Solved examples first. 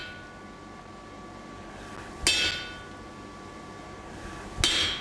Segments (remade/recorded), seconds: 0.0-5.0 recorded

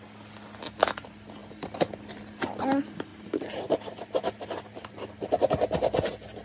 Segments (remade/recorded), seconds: 0.0-3.1 recorded; 3.1-4.9 remade; 4.9-6.4 recorded

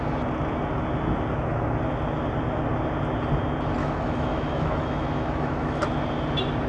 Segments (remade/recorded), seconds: 0.0-3.8 recorded; 3.8-5.8 remade; 5.8-6.7 recorded

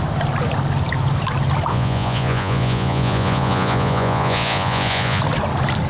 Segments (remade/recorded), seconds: 0.0-1.7 recorded; 1.7-5.2 remade; 5.2-5.9 recorded

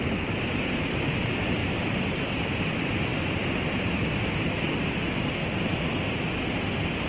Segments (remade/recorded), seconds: 0.0-7.1 recorded